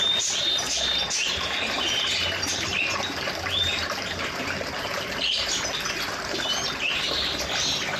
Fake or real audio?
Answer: fake